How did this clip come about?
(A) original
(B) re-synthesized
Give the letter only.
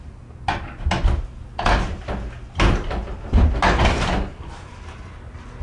A